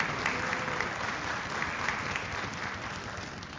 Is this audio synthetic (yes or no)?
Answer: no